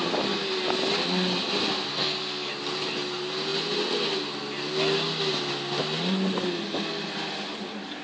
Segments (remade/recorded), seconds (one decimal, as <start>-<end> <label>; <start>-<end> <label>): 0.0-1.9 recorded; 1.9-2.5 remade; 2.5-8.0 recorded